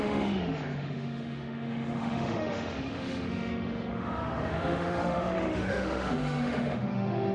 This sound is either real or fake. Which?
fake